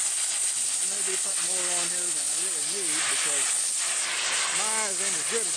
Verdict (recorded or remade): recorded